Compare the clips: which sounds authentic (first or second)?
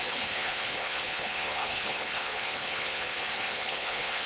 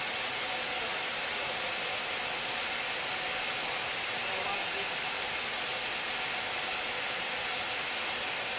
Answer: second